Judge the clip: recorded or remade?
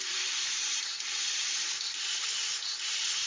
recorded